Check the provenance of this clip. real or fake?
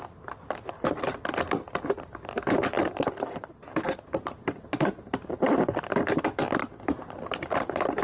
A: real